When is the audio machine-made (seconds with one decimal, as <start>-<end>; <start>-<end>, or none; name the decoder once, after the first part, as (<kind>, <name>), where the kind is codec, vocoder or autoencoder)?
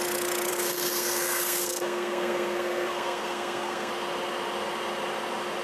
0.5-3.9 (codec, SNAC)